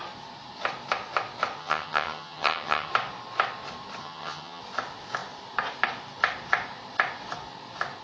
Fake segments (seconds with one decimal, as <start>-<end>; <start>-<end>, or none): 1.6-2.9; 4.0-4.6